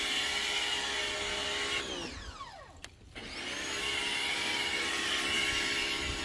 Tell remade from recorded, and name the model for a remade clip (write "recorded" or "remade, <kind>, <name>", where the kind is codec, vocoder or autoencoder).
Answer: recorded